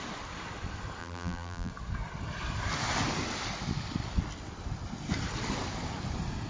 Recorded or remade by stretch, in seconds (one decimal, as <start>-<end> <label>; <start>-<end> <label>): 0.0-1.0 recorded; 1.0-1.7 remade; 1.7-6.5 recorded